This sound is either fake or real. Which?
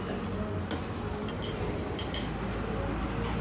real